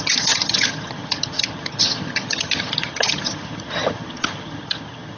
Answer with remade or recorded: remade